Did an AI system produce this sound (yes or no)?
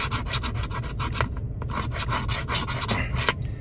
no